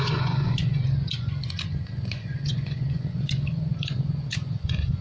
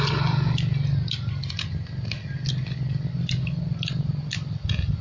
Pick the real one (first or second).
second